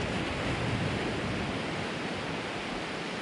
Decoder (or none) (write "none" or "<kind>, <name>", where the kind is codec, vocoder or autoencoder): none